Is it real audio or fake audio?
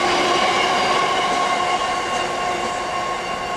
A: real